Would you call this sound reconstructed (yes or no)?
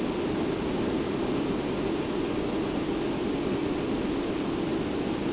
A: no